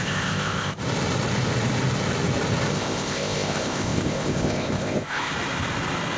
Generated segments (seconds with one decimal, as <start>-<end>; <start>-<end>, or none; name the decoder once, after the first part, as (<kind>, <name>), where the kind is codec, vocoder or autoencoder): 0.0-0.8 (codec, ZipCodec); 2.7-5.3